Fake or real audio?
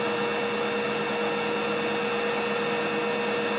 real